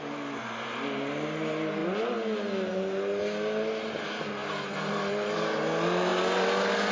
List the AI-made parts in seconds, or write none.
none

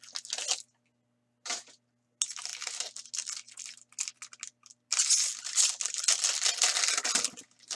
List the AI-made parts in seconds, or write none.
none

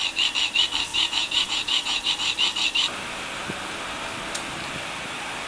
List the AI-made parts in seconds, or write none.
0.9-2.1 (vocoder, Vocos)

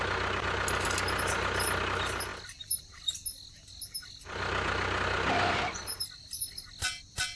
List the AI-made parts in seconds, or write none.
none

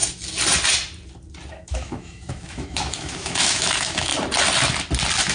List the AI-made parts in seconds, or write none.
1.5-4.1 (autoencoder, DAC-VAE)

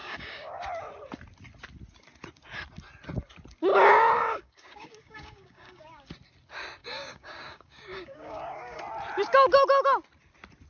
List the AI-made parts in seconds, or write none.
0.0-0.6 (codec, DAC); 3.7-6.1; 6.8-8.8

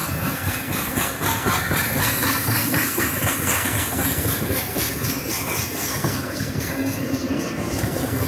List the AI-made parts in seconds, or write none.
0.0-8.3 (codec, SNAC)